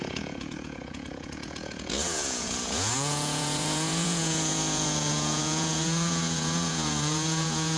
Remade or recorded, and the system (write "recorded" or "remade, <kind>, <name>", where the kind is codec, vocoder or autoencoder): remade, vocoder, Vocos